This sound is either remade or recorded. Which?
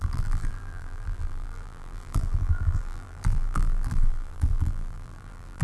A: remade